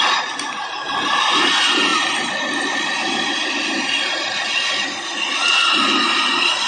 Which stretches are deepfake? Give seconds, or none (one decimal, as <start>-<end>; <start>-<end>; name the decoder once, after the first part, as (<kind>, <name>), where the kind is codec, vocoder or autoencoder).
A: none